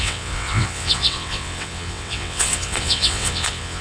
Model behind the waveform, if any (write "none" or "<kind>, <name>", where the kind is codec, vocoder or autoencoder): vocoder, WaveNeXt